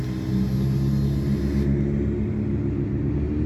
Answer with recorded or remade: recorded